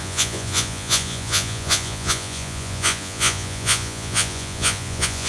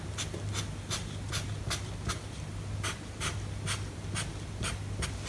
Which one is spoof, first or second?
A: first